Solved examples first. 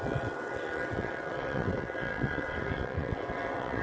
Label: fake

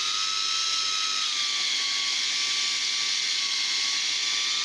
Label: real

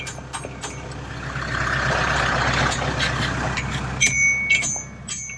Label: real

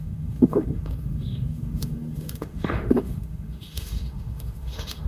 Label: fake